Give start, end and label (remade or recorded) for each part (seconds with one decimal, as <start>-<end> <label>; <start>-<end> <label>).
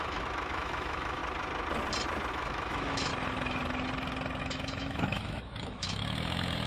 0.0-1.2 remade; 1.2-2.3 recorded; 2.3-3.1 remade; 3.1-4.4 recorded; 4.4-6.7 remade